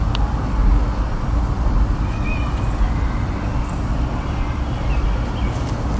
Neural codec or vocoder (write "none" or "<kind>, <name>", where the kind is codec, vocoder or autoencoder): none